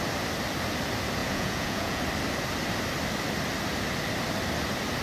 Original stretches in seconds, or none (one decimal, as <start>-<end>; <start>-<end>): 0.0-1.2; 2.0-5.0